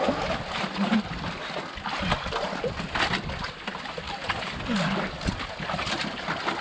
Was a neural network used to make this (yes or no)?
no